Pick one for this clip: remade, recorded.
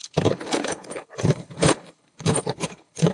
remade